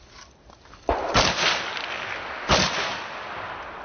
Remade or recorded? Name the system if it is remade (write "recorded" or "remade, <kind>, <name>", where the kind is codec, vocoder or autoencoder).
recorded